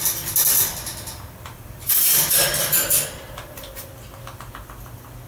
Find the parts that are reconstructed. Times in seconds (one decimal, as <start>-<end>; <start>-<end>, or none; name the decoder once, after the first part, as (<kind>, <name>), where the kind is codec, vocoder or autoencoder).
0.7-3.9 (vocoder, BigVGAN v2)